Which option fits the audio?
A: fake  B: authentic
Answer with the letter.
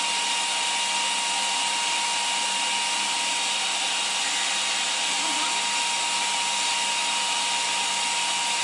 B